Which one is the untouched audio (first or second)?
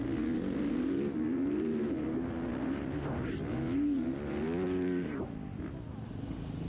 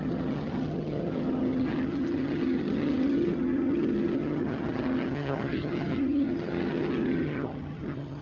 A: first